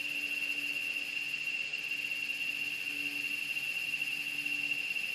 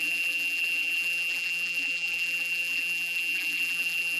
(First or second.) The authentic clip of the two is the first